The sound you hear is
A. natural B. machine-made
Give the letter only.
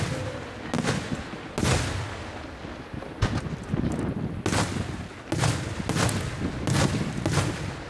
A